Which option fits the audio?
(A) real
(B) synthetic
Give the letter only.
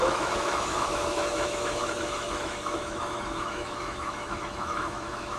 B